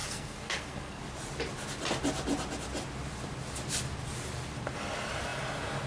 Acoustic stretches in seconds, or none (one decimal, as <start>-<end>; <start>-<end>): 1.0-5.9